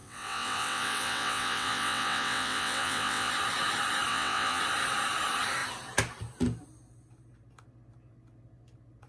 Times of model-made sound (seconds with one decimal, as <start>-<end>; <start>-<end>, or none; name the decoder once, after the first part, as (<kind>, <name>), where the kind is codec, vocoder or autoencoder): 0.0-3.3 (vocoder, WaveNeXt); 4.1-4.6